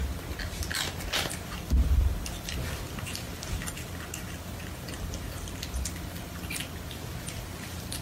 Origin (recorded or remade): recorded